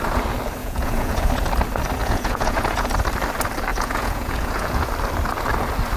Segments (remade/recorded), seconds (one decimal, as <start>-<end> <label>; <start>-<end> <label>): 0.0-0.6 recorded; 0.6-1.3 remade; 1.3-2.0 recorded; 2.0-2.9 remade; 2.9-3.7 recorded; 3.7-4.9 remade; 4.9-6.0 recorded